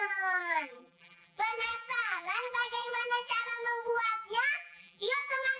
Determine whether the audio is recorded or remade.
remade